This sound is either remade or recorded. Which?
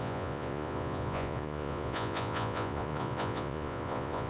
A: remade